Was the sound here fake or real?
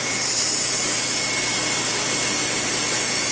real